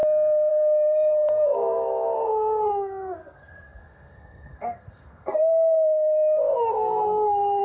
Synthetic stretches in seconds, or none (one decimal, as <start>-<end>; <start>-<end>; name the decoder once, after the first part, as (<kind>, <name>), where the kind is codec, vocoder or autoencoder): 0.5-7.6 (codec, SNAC)